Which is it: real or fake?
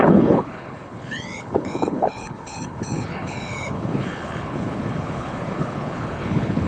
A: fake